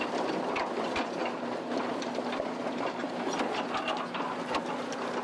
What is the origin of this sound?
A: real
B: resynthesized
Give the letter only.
A